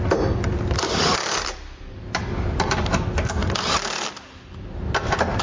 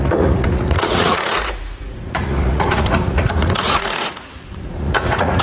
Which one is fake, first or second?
second